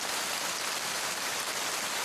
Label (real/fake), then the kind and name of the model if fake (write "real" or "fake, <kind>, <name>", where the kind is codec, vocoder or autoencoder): real